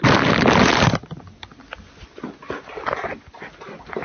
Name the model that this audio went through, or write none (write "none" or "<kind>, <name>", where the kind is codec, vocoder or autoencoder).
none